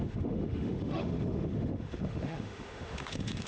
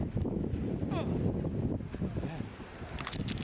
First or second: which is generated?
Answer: first